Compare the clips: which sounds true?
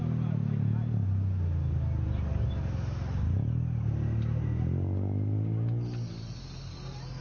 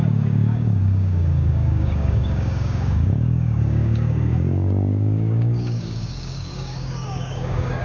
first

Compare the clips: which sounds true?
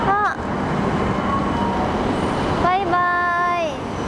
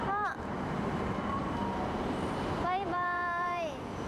first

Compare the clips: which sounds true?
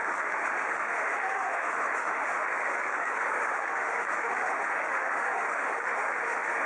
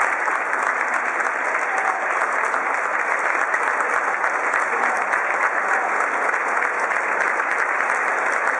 second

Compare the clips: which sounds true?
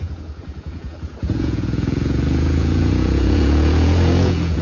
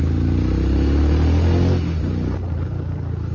second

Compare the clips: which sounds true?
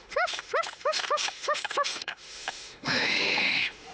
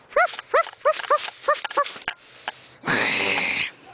second